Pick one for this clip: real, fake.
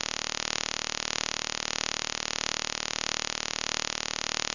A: real